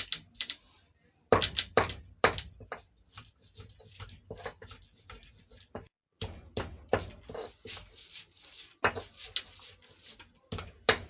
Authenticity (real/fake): real